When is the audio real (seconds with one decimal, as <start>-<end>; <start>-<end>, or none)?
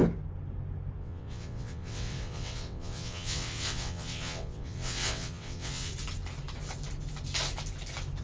0.0-1.0; 5.9-8.2